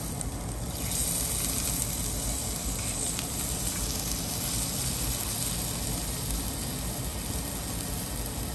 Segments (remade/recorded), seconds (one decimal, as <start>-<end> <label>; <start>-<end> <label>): 0.0-8.5 recorded